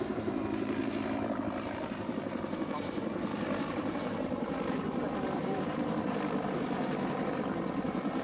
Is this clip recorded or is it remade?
remade